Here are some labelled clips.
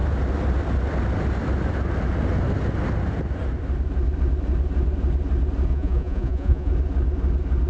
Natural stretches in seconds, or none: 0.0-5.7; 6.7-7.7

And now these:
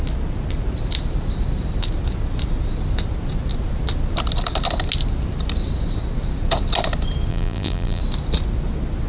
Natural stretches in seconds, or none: 0.0-7.3; 8.0-9.1

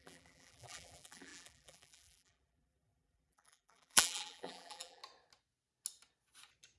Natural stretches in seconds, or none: 5.0-6.8

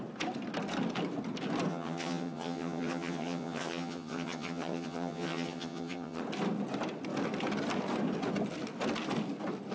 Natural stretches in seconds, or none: 0.0-1.7; 6.2-9.7

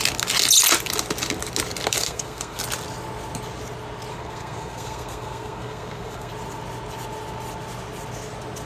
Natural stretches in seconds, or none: 0.0-2.0; 2.6-4.1; 6.3-8.7

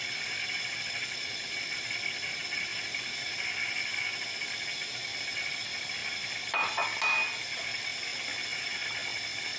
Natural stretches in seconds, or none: 0.0-9.6

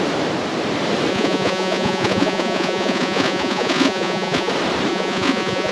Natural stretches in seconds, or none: 0.0-1.1; 4.5-4.9

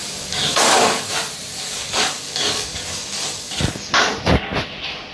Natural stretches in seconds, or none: 1.1-1.5; 3.9-5.1